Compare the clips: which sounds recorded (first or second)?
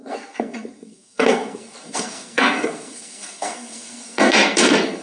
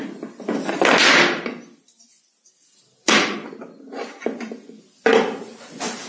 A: second